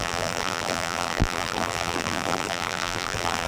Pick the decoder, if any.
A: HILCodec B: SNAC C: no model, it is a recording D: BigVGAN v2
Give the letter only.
D